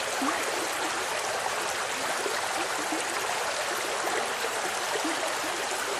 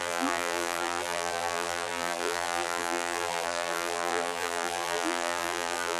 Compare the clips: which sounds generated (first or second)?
second